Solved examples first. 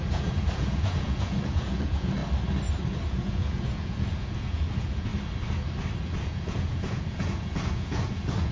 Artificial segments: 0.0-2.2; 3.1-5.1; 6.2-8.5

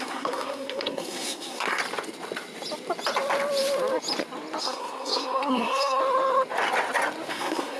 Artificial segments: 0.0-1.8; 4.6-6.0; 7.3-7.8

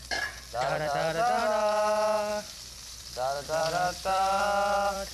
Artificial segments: 0.0-1.4; 2.3-5.1

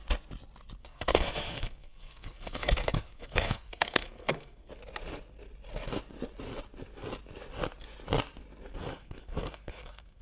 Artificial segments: 0.8-4.7; 8.9-10.2

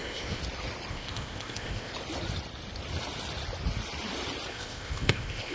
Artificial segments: 0.0-0.4; 0.9-1.9; 4.5-5.5

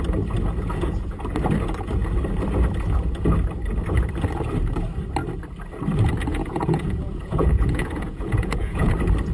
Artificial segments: 6.3-8.9

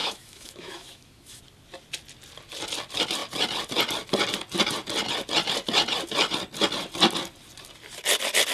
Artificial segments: 0.0-1.4